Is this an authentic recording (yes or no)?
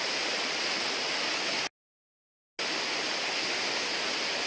yes